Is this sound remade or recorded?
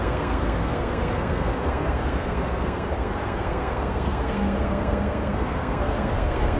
remade